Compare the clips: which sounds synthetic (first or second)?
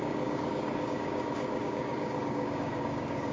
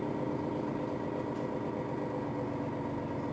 first